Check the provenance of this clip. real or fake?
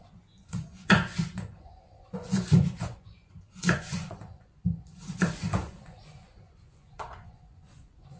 fake